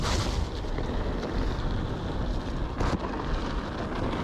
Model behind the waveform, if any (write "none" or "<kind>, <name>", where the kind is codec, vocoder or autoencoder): none